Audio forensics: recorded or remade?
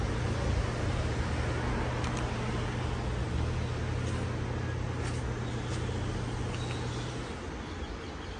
recorded